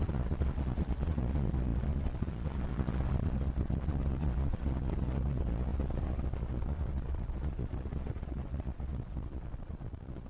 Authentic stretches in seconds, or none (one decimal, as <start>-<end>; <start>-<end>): none